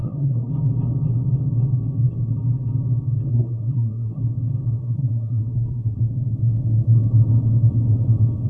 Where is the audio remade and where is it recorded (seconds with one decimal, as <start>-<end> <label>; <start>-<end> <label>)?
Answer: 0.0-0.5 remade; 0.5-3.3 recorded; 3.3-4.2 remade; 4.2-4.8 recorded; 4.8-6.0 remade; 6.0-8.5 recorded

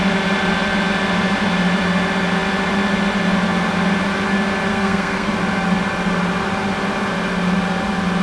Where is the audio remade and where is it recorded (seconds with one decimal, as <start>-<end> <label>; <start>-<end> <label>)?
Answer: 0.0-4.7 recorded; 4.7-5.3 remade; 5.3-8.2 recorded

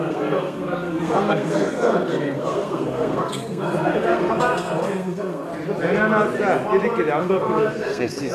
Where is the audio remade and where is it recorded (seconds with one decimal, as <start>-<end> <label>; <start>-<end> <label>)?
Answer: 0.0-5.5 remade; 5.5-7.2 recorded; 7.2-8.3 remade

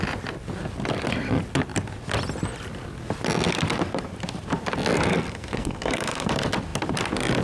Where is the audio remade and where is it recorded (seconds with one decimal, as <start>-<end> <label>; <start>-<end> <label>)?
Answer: 0.0-5.1 recorded; 5.1-6.3 remade; 6.3-7.4 recorded